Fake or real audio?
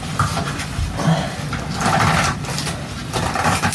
real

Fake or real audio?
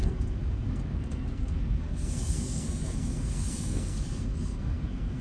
fake